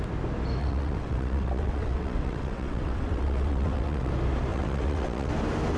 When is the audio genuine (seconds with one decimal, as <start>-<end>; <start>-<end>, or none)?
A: 0.0-0.6; 4.1-4.5; 5.3-5.8

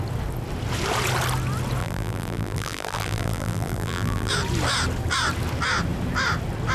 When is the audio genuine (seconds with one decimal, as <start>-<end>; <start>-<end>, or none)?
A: 0.0-1.8; 4.3-6.7

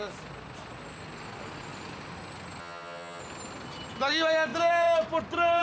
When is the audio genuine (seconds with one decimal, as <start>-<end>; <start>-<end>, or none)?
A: 0.0-2.6; 3.2-5.6

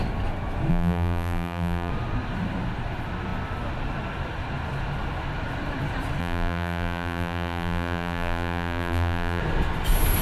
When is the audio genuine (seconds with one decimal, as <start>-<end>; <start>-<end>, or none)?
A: 0.0-0.7; 1.9-6.2; 9.4-10.2

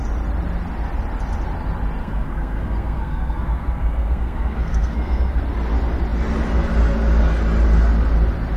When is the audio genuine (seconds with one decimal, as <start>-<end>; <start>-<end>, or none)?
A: 0.0-2.0; 5.4-8.6

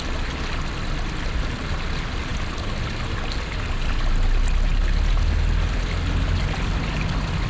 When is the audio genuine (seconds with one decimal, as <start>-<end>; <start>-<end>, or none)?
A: 0.0-7.5

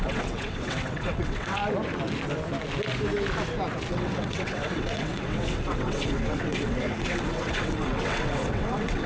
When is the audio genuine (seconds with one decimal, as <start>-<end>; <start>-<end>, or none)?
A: 1.6-3.9